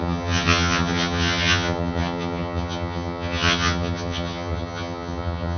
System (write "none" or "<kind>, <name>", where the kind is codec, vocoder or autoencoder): vocoder, HiFi-GAN